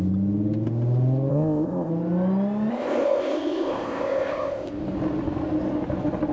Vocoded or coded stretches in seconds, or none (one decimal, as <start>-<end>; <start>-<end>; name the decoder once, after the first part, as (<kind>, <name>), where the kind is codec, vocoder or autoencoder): 1.3-1.9 (codec, ZipCodec); 2.7-4.7

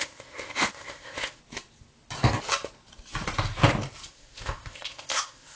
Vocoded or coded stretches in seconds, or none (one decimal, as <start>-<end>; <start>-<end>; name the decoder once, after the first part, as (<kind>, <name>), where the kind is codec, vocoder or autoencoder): 0.0-1.4 (codec, ZipCodec); 4.1-5.6

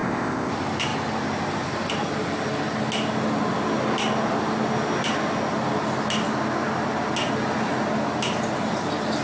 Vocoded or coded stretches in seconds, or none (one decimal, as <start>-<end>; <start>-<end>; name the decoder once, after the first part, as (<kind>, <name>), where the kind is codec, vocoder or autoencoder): 0.0-0.5 (codec, ZipCodec)

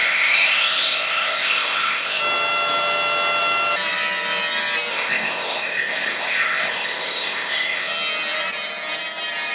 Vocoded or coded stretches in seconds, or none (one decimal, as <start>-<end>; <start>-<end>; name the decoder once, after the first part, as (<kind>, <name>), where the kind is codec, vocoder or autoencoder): 0.0-2.2 (codec, ZipCodec); 4.9-7.9

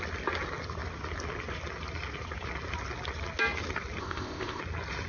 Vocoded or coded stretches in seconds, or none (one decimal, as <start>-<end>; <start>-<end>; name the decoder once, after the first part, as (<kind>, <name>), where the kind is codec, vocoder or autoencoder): 4.0-4.6 (codec, ZipCodec)